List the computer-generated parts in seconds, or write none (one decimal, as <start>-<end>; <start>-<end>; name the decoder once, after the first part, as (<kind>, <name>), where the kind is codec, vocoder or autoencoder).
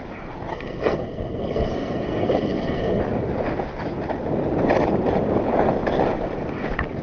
0.5-3.0 (codec, SNAC)